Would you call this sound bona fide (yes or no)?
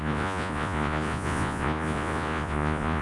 no